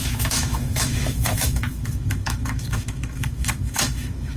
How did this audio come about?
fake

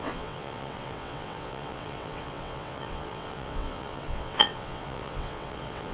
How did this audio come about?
fake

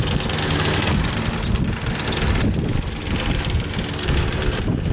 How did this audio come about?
real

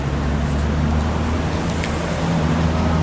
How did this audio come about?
real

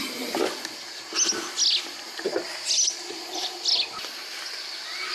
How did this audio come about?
real